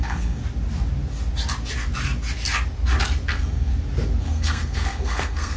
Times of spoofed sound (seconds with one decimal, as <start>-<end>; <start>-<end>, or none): 0.0-0.4; 3.3-3.7; 4.2-5.6